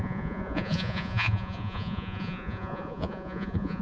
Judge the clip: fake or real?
fake